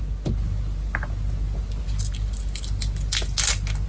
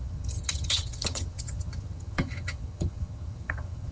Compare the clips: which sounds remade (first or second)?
second